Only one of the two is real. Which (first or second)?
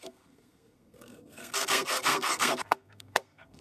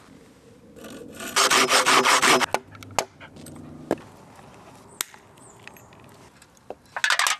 second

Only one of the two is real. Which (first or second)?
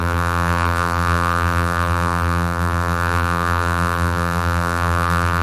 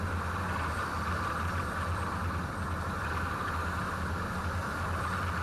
second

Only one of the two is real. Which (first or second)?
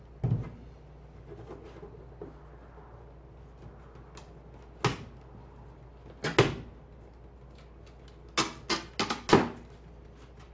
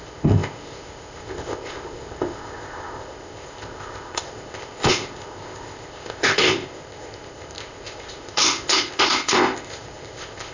first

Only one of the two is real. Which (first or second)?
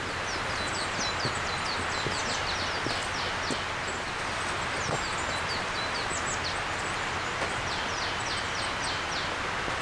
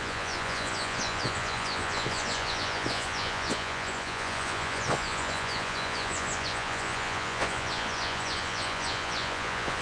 first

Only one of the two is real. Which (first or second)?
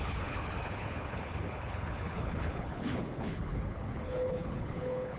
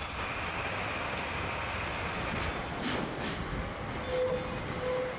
second